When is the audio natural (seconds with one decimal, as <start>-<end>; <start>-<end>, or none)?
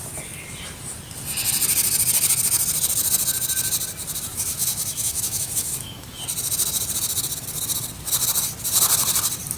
0.0-4.3; 6.2-9.6